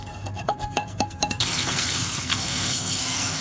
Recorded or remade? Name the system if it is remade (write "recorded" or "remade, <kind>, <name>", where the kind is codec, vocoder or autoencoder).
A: remade, codec, SNAC